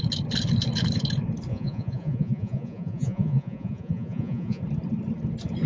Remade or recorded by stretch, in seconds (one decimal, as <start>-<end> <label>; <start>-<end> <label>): 0.0-1.5 recorded; 1.5-4.6 remade; 4.6-5.7 recorded